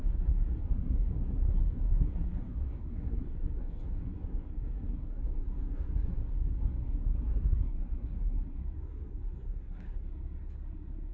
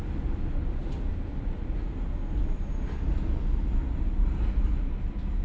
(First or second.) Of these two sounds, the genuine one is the second